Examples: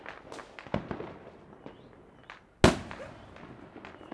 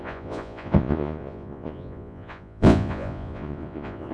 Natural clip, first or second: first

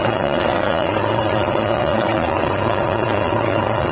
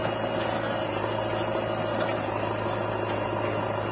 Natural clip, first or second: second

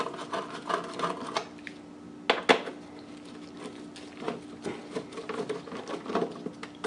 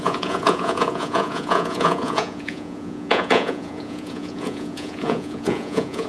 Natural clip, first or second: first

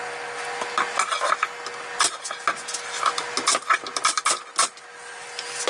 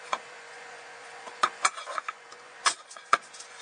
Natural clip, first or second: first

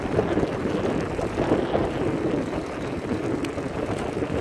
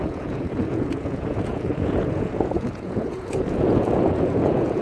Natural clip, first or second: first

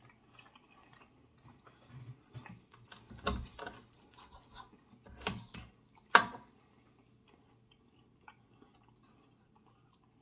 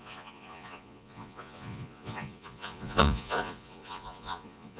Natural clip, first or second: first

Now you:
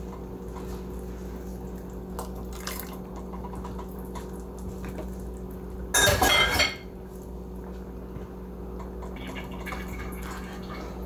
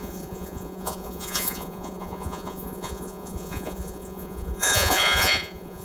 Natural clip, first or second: first